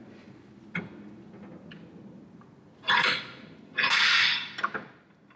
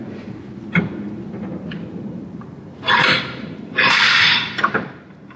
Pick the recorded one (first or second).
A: first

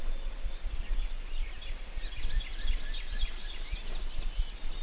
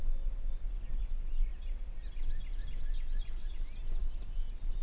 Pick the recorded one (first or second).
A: second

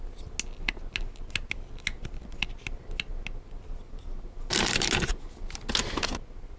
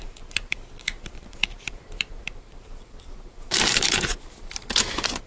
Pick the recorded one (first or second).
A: first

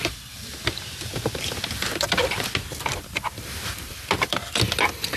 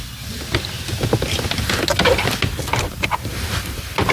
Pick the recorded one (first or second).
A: second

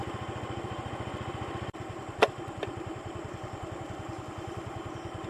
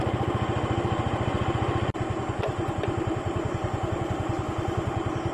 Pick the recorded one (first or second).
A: second